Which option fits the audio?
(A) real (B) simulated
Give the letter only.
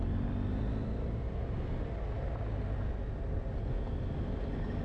A